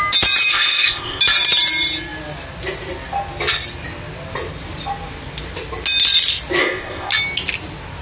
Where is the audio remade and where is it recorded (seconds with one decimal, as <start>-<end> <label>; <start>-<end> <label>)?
0.0-0.5 recorded; 0.5-1.2 remade; 1.2-6.6 recorded; 6.6-7.1 remade; 7.1-8.0 recorded